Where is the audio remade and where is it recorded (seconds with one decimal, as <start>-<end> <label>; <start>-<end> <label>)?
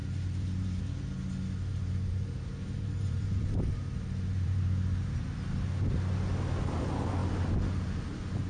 0.0-0.8 remade; 0.8-1.7 recorded; 1.7-5.3 remade; 5.3-8.5 recorded